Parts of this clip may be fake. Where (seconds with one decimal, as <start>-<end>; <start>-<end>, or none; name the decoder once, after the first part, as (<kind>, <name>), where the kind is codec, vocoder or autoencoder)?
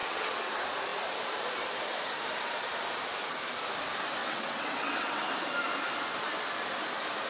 0.0-0.5 (vocoder, WaveNeXt); 4.2-5.3